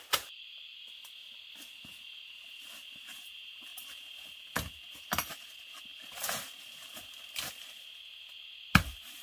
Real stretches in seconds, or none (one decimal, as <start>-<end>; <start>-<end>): 0.0-9.2